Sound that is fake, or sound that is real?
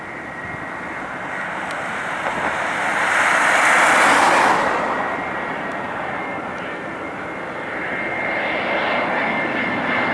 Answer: real